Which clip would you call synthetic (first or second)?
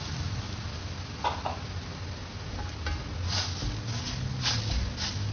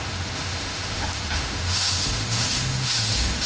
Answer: second